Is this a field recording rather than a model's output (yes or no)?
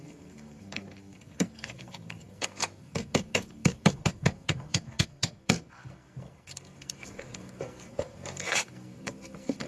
no